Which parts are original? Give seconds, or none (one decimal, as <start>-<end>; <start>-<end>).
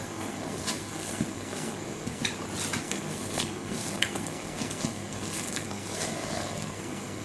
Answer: 2.2-2.8